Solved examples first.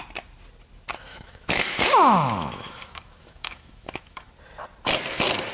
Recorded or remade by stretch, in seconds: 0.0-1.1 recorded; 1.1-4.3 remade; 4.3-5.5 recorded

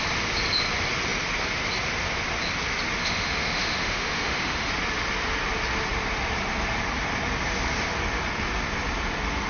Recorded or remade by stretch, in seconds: 0.0-3.0 recorded; 3.0-4.7 remade; 4.7-9.5 recorded